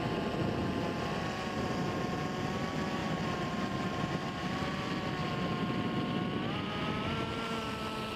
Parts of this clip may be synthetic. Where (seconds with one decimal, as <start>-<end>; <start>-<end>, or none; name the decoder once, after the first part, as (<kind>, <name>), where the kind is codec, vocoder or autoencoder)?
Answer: 3.0-4.7 (vocoder, BigVGAN v2)